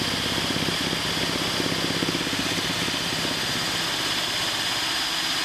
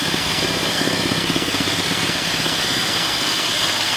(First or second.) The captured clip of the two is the first